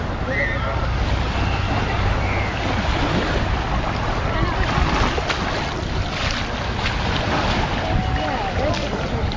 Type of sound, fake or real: real